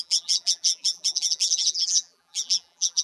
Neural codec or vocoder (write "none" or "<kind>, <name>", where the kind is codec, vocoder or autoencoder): vocoder, BigVGAN v2